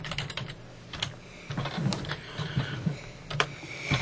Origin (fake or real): fake